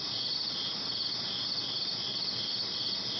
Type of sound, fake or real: real